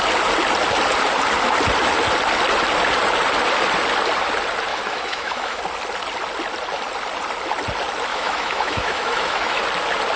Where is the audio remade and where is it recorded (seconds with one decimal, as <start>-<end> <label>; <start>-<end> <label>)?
0.0-4.7 recorded; 4.7-5.6 remade; 5.6-8.1 recorded; 8.1-9.6 remade; 9.6-10.2 recorded